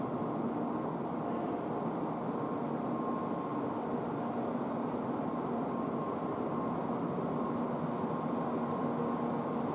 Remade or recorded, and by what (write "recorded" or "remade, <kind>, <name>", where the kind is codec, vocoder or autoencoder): recorded